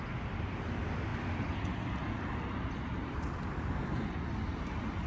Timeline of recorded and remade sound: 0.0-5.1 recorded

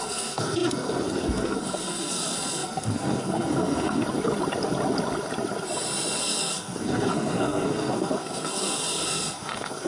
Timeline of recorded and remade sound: 0.0-4.0 remade; 4.0-6.2 recorded; 6.2-9.9 remade

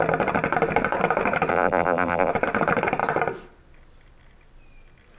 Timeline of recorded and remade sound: 0.0-1.5 recorded; 1.5-2.3 remade; 2.3-5.2 recorded

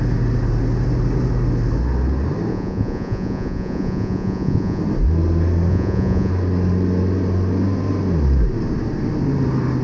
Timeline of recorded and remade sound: 0.0-2.5 recorded; 2.5-4.8 remade; 4.8-5.7 recorded; 5.7-6.3 remade; 6.3-9.8 recorded

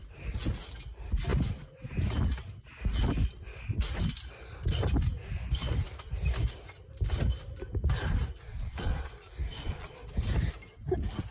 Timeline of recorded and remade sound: 0.0-8.5 recorded; 8.5-9.1 remade; 9.1-9.5 recorded; 9.5-10.0 remade; 10.0-11.3 recorded